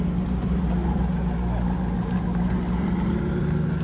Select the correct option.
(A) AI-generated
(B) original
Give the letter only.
B